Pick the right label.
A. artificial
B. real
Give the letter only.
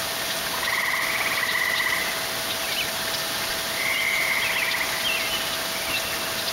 B